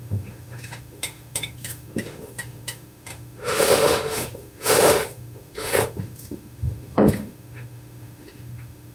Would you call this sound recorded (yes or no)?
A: no